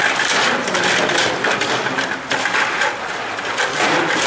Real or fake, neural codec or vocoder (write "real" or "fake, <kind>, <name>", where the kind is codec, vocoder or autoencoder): real